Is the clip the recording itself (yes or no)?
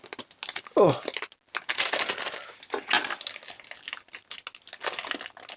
yes